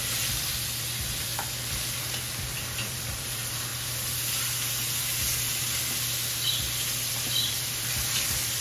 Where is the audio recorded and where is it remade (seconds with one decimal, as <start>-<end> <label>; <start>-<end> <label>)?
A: 0.0-1.3 remade; 1.3-1.9 recorded; 1.9-3.7 remade; 3.7-7.1 recorded; 7.1-8.6 remade